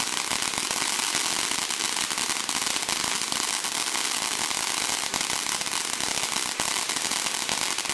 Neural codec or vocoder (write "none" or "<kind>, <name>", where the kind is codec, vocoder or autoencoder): none